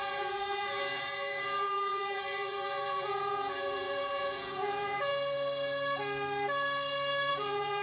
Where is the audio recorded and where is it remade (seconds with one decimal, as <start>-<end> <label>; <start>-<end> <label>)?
0.0-5.1 remade; 5.1-7.3 recorded; 7.3-7.8 remade